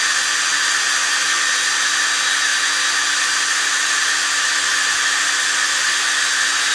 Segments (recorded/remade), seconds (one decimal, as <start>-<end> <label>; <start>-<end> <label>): 0.0-6.7 recorded